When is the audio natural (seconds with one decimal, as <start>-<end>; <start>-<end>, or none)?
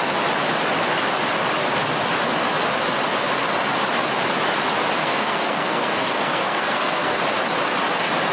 0.0-5.0; 7.2-8.3